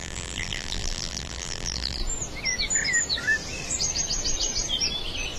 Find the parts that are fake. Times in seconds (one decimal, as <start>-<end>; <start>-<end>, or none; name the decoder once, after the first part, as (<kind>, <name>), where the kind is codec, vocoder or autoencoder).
0.0-2.0 (vocoder, BigVGAN v2)